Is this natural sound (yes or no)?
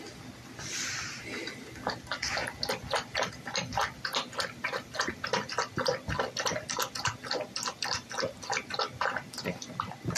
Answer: yes